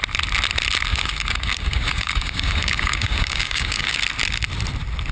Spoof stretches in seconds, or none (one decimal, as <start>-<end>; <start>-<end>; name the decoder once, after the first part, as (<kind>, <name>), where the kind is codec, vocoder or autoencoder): 0.9-4.0 (codec, DAC)